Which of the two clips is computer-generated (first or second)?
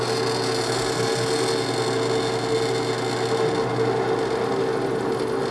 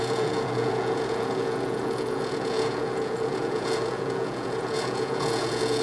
second